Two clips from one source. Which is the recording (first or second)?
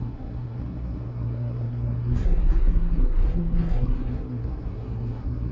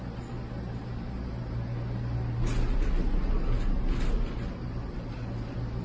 second